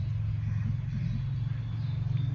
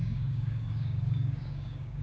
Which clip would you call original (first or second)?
first